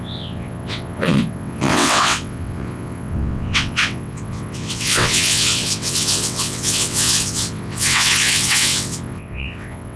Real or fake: fake